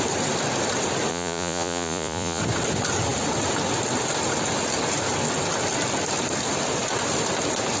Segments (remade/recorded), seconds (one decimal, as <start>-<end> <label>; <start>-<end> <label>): 0.0-1.1 recorded; 1.1-2.4 remade; 2.4-7.8 recorded